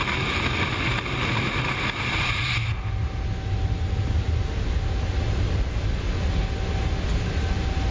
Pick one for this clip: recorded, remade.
recorded